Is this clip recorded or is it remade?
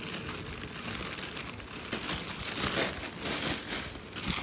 recorded